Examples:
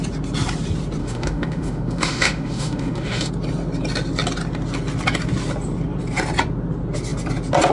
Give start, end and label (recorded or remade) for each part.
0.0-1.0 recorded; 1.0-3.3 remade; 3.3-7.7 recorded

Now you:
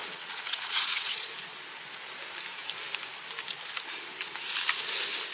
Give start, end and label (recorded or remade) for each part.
0.0-1.3 remade; 1.3-5.3 recorded

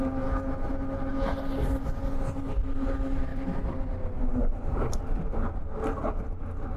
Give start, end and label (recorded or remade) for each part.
0.0-3.3 recorded; 3.3-4.5 remade; 4.5-6.8 recorded

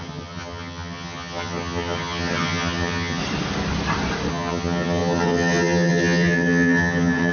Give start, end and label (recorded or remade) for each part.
0.0-3.2 remade; 3.2-4.3 recorded; 4.3-7.3 remade

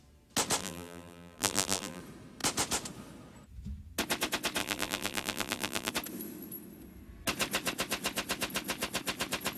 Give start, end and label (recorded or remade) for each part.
0.0-0.6 recorded; 0.6-2.0 remade; 2.0-4.6 recorded; 4.6-5.9 remade; 5.9-9.6 recorded

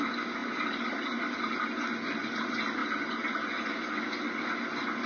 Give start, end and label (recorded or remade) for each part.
0.0-0.4 recorded; 0.4-2.4 remade; 2.4-5.1 recorded

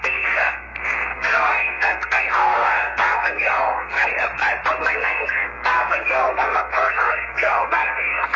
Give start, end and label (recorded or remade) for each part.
0.0-4.1 remade; 4.1-4.8 recorded; 4.8-8.4 remade

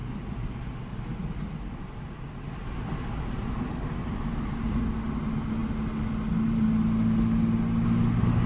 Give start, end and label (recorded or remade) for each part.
0.0-8.5 recorded